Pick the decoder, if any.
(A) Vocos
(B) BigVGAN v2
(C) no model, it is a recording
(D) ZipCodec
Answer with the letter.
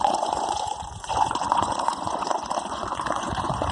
A